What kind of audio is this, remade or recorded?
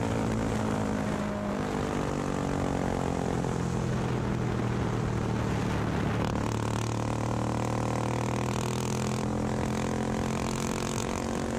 recorded